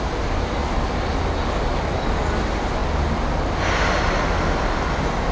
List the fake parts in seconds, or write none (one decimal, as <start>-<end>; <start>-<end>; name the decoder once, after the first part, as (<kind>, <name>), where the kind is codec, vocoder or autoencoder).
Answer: none